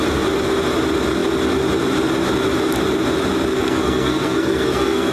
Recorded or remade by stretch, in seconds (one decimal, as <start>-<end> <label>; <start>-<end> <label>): 0.0-3.5 recorded; 3.5-5.1 remade